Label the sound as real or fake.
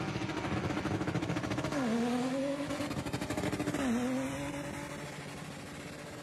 real